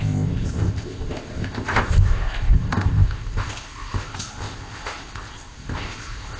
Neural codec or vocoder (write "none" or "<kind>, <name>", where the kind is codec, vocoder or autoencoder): codec, ZipCodec